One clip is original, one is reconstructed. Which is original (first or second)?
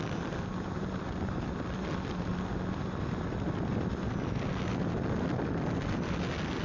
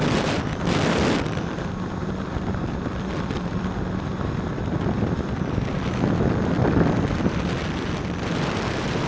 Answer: first